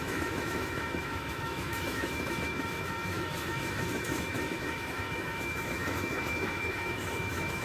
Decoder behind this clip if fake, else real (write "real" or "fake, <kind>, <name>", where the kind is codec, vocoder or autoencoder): fake, autoencoder, DAC-VAE